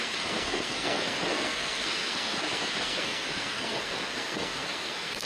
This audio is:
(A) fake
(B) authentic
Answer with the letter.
A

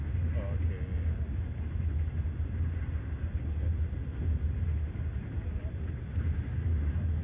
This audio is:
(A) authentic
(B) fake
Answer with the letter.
A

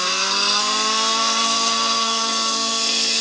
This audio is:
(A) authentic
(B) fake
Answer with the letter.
B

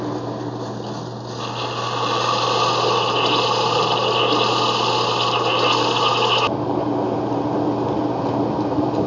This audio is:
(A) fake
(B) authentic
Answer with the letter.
B